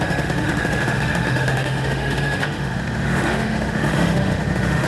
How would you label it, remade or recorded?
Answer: remade